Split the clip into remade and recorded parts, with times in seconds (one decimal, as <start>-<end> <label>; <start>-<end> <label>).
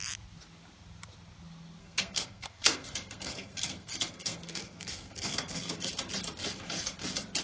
0.0-1.8 recorded; 1.8-5.9 remade; 5.9-7.4 recorded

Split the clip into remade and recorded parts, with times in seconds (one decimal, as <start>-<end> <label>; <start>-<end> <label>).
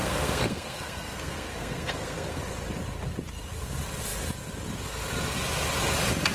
0.0-2.4 remade; 2.4-6.3 recorded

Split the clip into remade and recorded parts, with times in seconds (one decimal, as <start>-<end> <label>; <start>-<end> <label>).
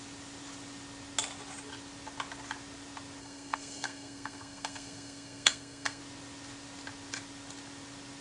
0.0-3.2 recorded; 3.2-6.0 remade; 6.0-8.2 recorded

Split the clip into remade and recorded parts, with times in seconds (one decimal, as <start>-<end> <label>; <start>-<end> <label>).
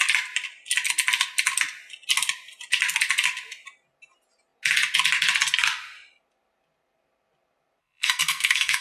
0.0-7.8 recorded; 7.8-8.8 remade